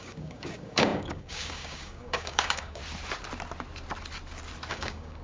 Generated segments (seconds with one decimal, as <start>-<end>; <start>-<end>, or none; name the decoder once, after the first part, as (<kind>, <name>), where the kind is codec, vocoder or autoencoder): 0.0-2.8 (codec, DAC); 4.7-5.2